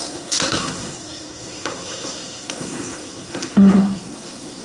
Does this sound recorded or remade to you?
remade